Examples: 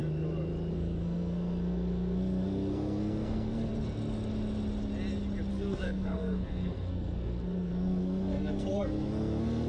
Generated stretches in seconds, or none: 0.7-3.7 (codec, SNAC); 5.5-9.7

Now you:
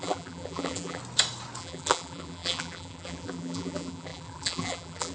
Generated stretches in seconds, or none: 0.0-1.0 (vocoder, BigVGAN v2); 1.6-5.1